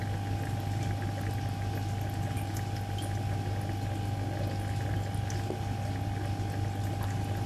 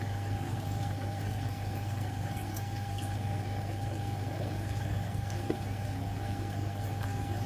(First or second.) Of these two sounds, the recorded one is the first